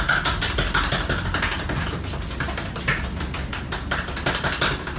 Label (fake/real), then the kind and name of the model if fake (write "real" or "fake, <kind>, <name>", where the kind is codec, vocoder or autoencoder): real